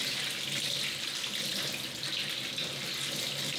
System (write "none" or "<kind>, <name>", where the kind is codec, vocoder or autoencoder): none